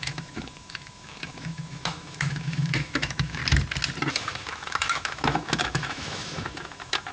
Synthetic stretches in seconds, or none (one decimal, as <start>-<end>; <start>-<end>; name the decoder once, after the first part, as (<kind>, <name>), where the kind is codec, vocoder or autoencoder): 0.0-3.4 (autoencoder, DAC-VAE); 4.1-7.1